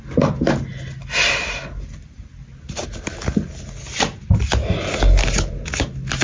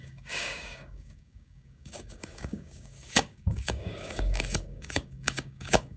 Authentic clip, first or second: first